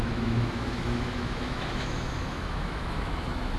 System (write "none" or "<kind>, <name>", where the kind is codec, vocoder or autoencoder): autoencoder, DAC-VAE